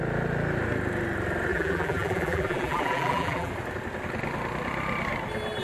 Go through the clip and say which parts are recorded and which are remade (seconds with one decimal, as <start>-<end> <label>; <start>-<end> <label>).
0.0-1.5 recorded; 1.5-3.5 remade; 3.5-5.6 recorded